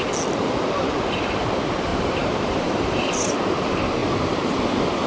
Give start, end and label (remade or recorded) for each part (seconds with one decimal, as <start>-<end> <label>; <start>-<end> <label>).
0.0-1.9 recorded; 1.9-3.2 remade; 3.2-4.0 recorded; 4.0-4.6 remade; 4.6-5.1 recorded